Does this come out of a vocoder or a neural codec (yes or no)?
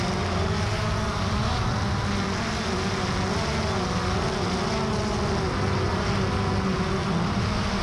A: no